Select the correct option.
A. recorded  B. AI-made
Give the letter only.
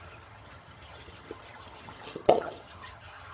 B